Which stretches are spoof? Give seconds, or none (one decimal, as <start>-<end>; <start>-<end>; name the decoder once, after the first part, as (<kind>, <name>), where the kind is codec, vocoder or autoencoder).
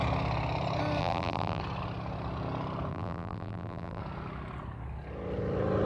1.0-1.6 (vocoder, BigVGAN v2); 2.9-4.0